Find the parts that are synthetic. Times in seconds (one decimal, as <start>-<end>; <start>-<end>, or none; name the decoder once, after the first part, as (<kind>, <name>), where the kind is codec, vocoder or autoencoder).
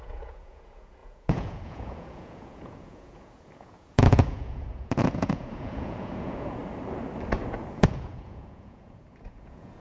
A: 0.0-6.6 (vocoder, Vocos); 7.7-9.8